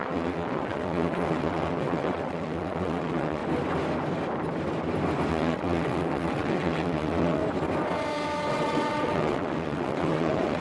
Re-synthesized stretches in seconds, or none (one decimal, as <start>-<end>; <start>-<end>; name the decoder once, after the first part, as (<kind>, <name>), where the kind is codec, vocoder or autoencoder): 0.0-3.4 (vocoder, WaveNeXt); 5.3-7.4; 8.5-10.6

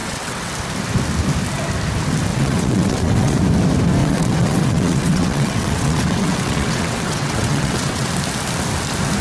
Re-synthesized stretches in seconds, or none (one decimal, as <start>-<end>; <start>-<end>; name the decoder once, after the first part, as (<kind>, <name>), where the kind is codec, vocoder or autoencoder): 0.0-0.5 (vocoder, WaveNeXt); 2.3-3.4; 4.0-8.1

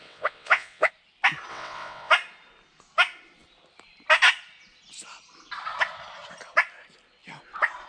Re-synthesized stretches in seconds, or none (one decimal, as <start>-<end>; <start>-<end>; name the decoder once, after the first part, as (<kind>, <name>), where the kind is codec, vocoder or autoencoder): 0.0-0.9 (vocoder, WaveNeXt); 1.5-2.1

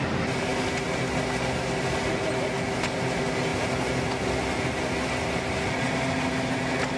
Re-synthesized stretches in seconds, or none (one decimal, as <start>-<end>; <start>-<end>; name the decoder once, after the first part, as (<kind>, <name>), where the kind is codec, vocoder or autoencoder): none

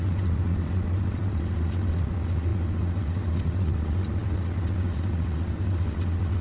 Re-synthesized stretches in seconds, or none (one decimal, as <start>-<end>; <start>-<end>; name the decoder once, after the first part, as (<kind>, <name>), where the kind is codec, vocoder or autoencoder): 0.0-6.4 (vocoder, WaveNeXt)

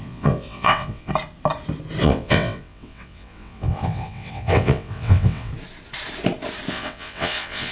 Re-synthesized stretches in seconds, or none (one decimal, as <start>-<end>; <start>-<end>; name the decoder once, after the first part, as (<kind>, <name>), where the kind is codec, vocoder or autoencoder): 0.0-1.1 (vocoder, WaveNeXt); 2.0-5.5; 6.7-7.7